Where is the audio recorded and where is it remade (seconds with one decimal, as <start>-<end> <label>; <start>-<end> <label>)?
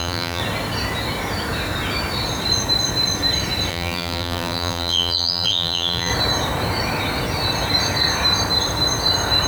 0.0-0.4 remade; 0.4-3.7 recorded; 3.7-6.1 remade; 6.1-9.5 recorded